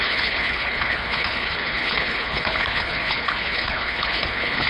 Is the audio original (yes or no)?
no